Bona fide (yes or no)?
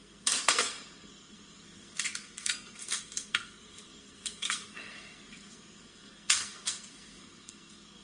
no